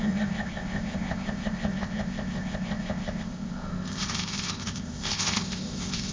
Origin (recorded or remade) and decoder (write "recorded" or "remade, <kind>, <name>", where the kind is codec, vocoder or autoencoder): remade, codec, ZipCodec